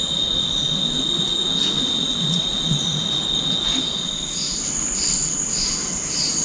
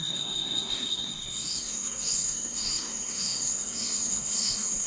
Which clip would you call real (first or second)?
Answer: first